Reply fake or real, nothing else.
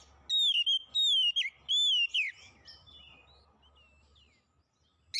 real